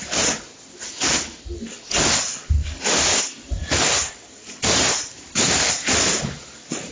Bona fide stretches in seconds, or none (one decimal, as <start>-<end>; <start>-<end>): 0.0-2.6; 3.2-3.6; 5.9-6.9